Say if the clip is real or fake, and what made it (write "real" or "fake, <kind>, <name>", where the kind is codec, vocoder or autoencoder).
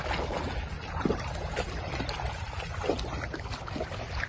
real